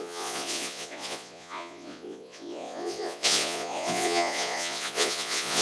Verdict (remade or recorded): remade